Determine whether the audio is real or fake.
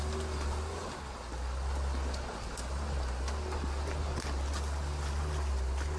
real